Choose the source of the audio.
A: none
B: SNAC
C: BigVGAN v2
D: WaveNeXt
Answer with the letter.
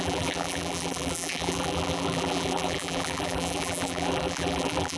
C